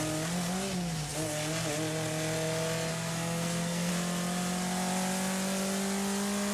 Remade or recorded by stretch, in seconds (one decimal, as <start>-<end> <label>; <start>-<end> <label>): 0.0-2.9 recorded; 2.9-3.9 remade; 3.9-6.5 recorded